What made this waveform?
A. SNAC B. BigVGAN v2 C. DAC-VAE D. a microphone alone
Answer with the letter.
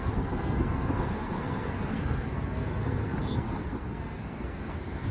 A